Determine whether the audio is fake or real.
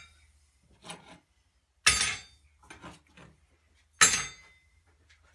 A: real